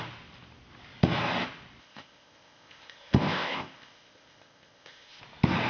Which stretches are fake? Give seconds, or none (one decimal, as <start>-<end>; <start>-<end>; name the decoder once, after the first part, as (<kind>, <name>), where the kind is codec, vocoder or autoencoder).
1.8-5.2 (codec, ZipCodec)